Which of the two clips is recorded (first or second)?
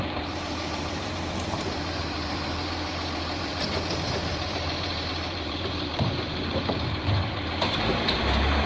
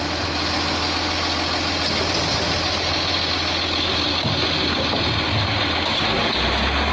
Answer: second